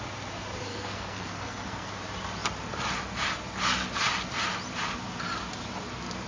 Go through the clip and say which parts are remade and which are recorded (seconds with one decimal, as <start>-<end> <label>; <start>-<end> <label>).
0.0-0.7 recorded; 0.7-1.9 remade; 1.9-6.3 recorded